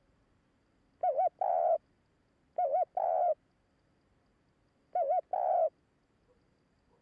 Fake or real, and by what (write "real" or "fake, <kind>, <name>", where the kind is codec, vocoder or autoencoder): real